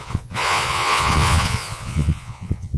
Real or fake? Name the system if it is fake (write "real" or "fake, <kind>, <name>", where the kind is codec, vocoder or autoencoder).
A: fake, vocoder, Vocos